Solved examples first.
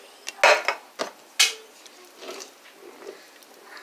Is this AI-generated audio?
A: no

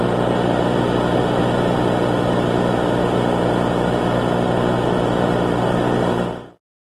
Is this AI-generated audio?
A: no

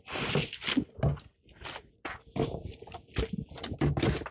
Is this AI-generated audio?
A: no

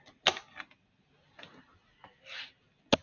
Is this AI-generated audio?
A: no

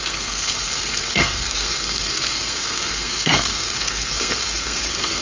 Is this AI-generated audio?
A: yes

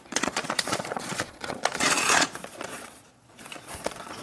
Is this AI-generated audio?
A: yes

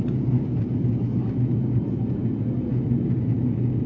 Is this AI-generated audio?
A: no